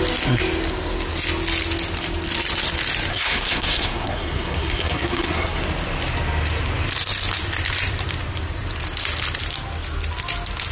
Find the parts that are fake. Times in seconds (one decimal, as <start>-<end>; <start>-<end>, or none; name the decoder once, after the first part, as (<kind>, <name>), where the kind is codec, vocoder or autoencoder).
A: 3.1-5.6 (codec, SNAC)